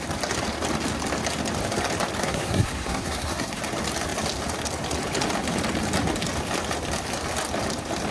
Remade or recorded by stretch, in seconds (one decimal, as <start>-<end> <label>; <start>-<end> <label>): 0.0-2.2 recorded; 2.2-3.6 remade; 3.6-8.1 recorded